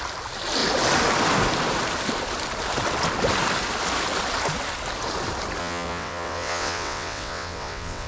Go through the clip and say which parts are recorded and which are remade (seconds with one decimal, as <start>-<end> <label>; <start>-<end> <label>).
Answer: 0.0-5.6 recorded; 5.6-8.1 remade